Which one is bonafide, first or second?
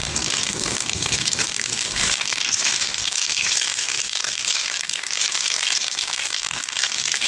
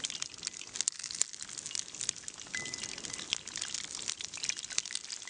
second